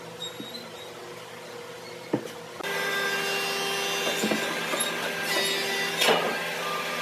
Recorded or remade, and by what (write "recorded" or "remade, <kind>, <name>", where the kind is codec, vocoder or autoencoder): recorded